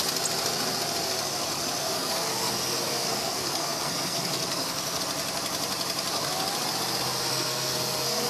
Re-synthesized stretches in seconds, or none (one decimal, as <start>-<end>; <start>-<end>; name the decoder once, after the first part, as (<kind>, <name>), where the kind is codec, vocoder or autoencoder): 1.8-5.0 (codec, SNAC); 7.3-8.3